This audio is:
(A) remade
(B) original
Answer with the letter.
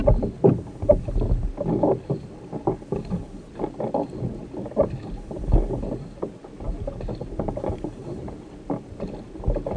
B